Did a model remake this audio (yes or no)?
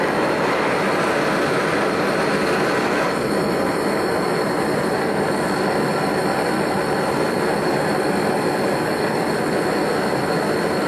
no